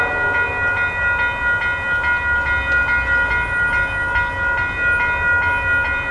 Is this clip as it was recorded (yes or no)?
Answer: yes